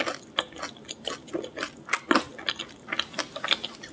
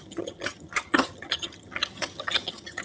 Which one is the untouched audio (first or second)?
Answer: first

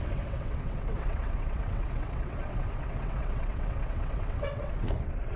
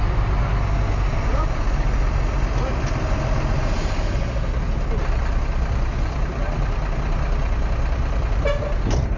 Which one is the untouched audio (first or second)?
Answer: second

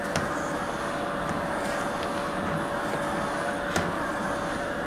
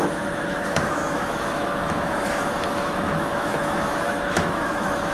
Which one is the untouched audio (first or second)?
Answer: first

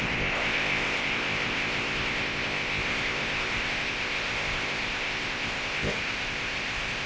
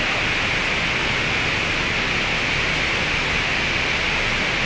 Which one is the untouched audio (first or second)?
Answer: second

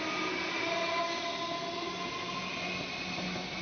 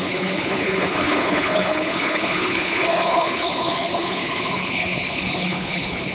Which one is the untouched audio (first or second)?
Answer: first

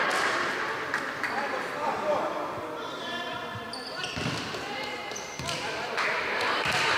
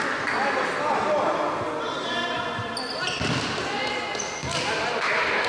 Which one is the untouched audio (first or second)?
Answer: second